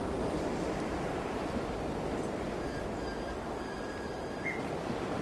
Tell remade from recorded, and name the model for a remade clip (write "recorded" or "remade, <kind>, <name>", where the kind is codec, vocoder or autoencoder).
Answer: recorded